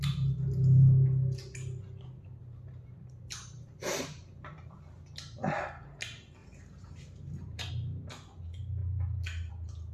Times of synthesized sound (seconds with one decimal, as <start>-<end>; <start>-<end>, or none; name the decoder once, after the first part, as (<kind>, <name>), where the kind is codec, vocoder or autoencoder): 2.4-4.7 (vocoder, BigVGAN v2); 6.4-7.7